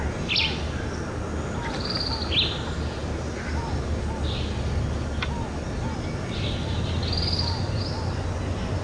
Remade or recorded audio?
recorded